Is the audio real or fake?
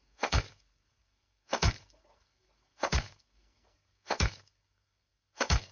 fake